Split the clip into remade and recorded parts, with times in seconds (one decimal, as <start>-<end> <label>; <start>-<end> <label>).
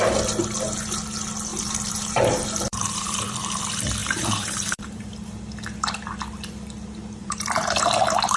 0.0-1.5 recorded; 1.5-3.3 remade; 3.3-4.0 recorded; 4.0-5.0 remade; 5.0-7.2 recorded; 7.2-7.8 remade; 7.8-8.4 recorded